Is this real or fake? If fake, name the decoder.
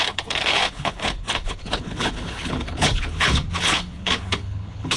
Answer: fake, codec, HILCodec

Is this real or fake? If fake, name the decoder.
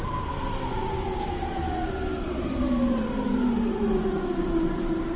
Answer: real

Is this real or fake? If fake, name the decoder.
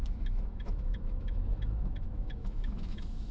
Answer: fake, autoencoder, DAC-VAE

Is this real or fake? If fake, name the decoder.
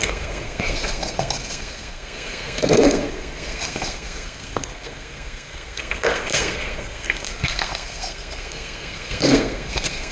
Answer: fake, codec, SNAC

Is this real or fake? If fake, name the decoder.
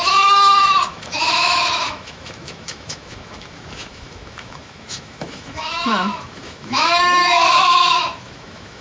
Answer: fake, autoencoder, DAC-VAE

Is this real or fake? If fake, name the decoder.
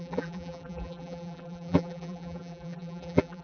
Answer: fake, vocoder, BigVGAN v2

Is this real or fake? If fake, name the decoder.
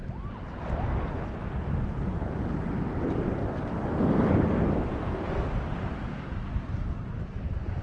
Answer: real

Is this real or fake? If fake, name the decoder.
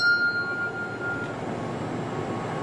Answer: real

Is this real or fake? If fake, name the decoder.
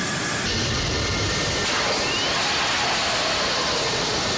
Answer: real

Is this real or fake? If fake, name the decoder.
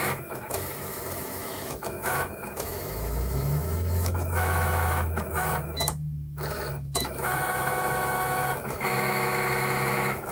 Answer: fake, autoencoder, DAC-VAE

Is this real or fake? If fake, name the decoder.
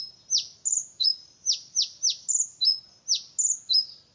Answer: real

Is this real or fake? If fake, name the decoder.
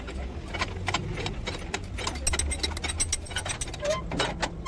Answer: real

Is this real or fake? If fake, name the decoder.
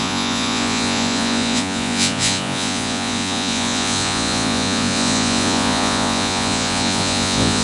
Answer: fake, vocoder, Vocos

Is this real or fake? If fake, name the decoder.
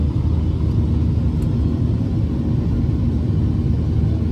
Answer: real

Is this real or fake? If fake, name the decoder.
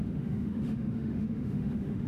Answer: fake, autoencoder, DAC-VAE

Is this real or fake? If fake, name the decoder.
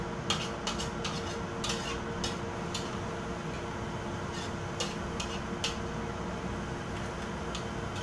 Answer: real